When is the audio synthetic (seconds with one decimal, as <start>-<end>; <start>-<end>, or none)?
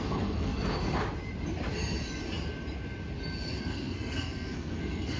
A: 0.0-0.5; 3.6-5.2